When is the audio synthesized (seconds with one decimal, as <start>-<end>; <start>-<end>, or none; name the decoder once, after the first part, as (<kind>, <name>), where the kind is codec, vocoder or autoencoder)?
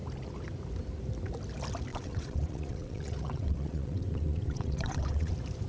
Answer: 1.9-5.3 (vocoder, WaveNeXt)